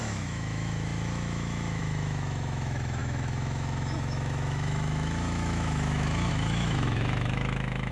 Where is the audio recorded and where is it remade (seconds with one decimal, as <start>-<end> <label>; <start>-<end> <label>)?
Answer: 0.0-7.9 remade